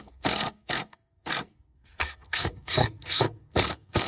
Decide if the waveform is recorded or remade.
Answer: remade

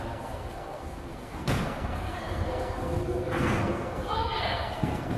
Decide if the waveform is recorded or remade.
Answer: remade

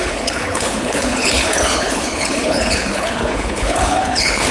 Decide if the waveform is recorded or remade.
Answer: remade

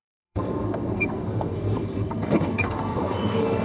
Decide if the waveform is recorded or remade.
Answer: remade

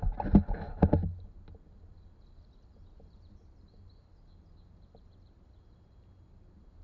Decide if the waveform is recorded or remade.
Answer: recorded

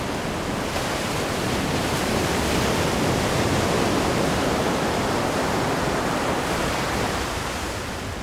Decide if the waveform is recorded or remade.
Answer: remade